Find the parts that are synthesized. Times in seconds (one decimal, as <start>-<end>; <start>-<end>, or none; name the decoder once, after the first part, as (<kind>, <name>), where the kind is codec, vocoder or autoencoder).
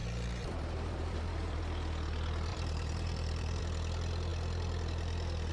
0.0-1.6 (vocoder, BigVGAN v2); 2.5-3.6